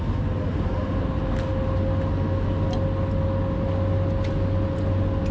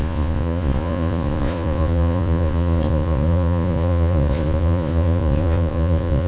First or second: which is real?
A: first